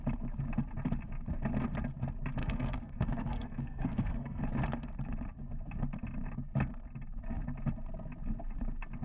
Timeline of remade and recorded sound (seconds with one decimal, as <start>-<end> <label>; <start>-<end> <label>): 0.0-2.4 recorded; 2.4-4.4 remade; 4.4-9.0 recorded